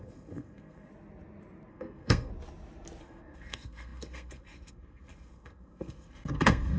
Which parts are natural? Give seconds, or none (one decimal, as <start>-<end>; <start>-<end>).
0.9-1.7; 2.3-3.0